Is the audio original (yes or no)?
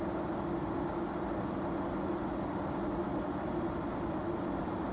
yes